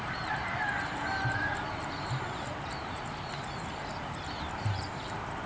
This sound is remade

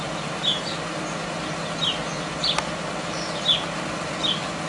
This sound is recorded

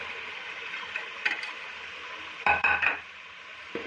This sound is remade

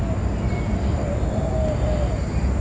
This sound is recorded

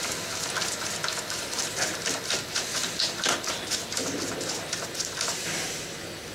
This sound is remade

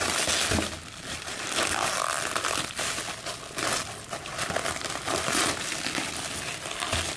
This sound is recorded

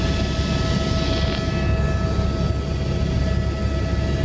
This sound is recorded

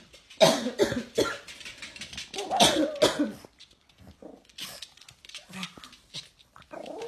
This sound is recorded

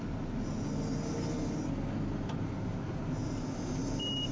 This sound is recorded